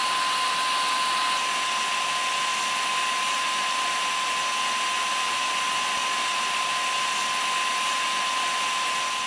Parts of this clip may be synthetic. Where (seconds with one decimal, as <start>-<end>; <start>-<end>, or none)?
6.0-6.6